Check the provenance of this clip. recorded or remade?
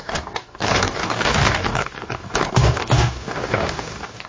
remade